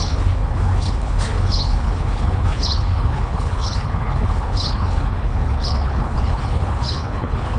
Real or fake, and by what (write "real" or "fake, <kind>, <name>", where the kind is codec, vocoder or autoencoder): fake, codec, HILCodec